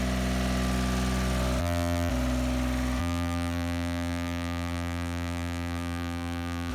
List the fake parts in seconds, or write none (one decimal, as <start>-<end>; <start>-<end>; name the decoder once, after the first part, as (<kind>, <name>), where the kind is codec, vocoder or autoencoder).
1.6-2.1 (vocoder, BigVGAN v2); 3.0-6.7